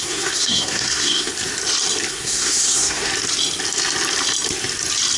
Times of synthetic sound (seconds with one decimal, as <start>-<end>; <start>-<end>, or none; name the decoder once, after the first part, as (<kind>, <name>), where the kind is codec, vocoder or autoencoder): 0.0-1.3 (codec, SNAC); 2.1-3.1